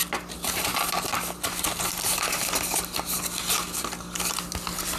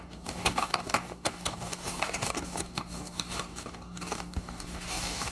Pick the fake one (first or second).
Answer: second